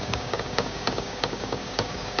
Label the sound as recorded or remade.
remade